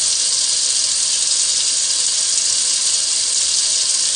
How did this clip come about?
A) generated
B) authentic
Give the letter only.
B